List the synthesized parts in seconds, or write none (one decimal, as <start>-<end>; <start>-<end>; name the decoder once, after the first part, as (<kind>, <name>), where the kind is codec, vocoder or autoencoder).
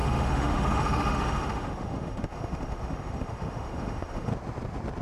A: 0.0-4.3 (autoencoder, DAC-VAE)